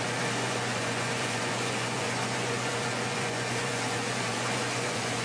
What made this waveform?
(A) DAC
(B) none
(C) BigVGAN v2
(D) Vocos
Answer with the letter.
D